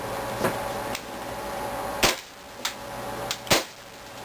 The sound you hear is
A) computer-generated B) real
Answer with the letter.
B